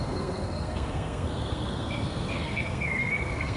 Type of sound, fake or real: fake